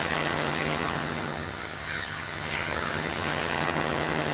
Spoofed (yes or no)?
yes